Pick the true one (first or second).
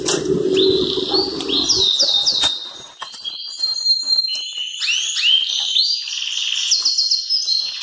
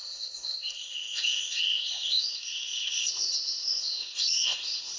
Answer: first